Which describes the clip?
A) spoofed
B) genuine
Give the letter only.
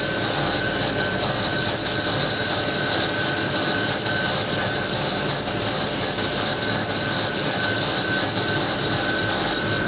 B